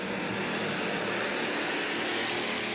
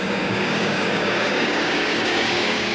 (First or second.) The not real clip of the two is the second